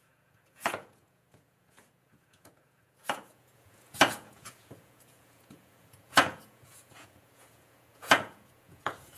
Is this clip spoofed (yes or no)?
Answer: yes